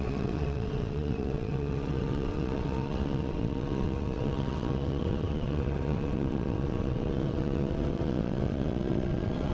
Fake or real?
fake